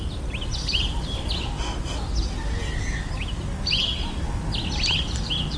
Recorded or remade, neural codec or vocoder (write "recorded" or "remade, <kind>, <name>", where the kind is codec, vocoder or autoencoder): recorded